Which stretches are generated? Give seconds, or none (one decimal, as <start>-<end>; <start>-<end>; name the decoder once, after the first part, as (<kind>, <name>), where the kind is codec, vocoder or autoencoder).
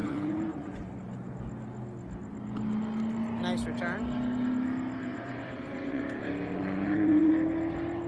0.0-0.8 (vocoder, Vocos); 5.0-6.0; 6.5-7.3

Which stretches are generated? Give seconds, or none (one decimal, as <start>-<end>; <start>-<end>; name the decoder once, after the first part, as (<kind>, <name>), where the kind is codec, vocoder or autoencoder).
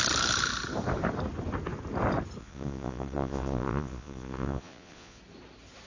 2.4-5.2 (vocoder, Vocos)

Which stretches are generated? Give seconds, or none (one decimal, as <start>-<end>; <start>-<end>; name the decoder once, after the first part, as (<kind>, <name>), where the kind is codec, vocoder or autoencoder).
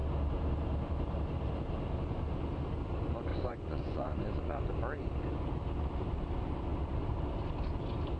3.3-4.6 (vocoder, Vocos)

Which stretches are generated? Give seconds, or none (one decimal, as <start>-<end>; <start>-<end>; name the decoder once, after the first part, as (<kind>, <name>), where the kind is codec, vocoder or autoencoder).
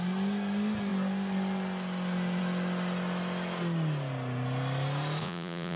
5.2-5.8 (vocoder, Vocos)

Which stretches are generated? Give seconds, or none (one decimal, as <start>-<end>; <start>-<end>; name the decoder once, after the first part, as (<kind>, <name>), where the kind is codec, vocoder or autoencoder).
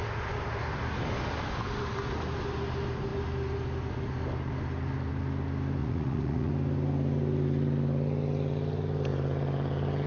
5.8-6.5 (vocoder, Vocos)